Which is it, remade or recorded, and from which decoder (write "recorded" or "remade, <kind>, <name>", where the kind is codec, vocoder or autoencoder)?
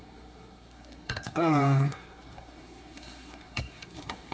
remade, codec, SNAC